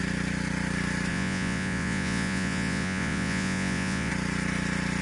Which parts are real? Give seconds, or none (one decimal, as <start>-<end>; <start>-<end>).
0.0-1.1; 4.1-5.0